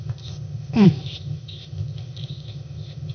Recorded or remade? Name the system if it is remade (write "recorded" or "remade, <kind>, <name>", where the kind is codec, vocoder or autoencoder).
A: remade, codec, ZipCodec